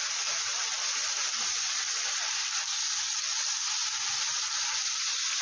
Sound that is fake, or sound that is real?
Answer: real